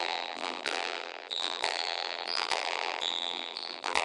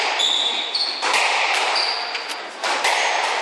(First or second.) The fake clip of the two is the first